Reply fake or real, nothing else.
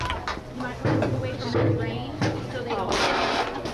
real